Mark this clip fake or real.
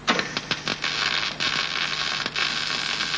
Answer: real